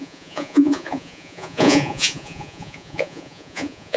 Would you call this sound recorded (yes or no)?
no